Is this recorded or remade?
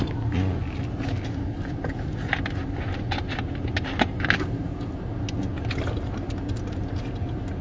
recorded